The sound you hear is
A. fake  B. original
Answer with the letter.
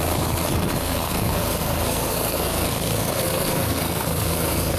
A